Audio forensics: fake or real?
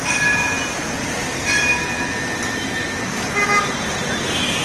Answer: real